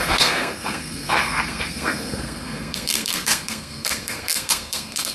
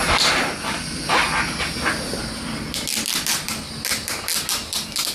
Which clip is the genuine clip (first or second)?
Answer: second